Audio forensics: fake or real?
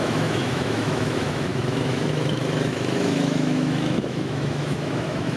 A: fake